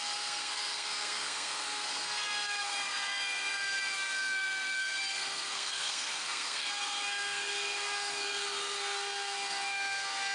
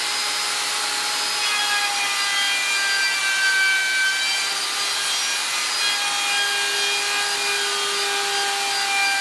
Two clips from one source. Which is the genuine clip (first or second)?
second